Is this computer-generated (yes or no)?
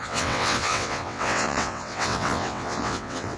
yes